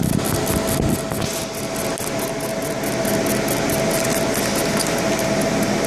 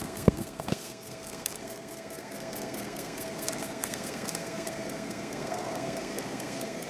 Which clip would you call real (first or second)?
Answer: first